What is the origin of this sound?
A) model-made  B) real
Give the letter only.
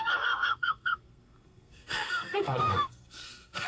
A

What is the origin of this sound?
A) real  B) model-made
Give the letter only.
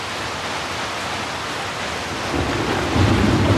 A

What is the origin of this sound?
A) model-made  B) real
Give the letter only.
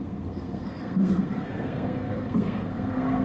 A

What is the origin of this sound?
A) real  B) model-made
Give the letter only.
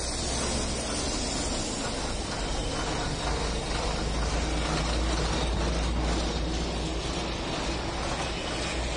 A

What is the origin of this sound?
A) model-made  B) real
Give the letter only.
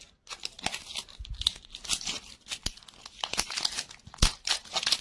B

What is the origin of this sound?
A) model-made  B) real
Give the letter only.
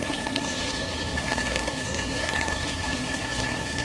A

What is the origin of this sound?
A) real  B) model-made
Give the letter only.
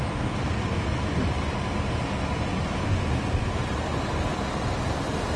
A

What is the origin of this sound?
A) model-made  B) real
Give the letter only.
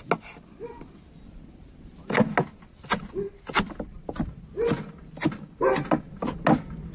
B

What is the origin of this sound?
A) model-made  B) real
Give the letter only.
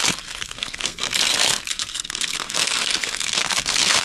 A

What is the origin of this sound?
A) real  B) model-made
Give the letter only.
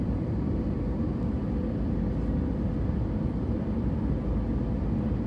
A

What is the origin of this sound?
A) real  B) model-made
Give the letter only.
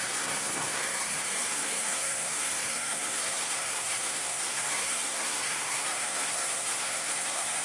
B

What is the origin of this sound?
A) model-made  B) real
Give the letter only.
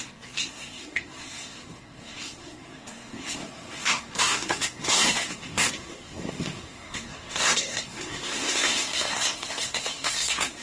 A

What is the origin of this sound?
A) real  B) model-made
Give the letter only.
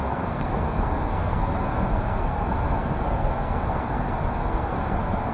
B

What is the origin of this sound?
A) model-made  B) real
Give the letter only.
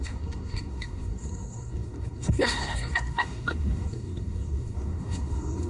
A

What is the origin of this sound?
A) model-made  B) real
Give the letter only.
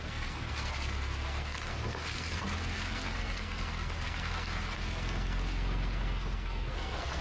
A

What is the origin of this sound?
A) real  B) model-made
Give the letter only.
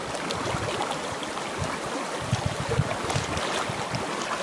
A